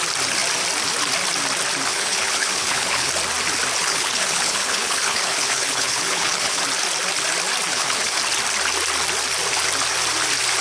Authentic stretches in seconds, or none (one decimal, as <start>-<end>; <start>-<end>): 0.0-1.9; 3.1-3.8; 6.6-7.7; 8.2-10.6